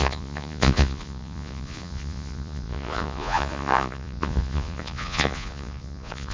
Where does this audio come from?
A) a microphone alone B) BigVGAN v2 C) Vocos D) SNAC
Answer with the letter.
C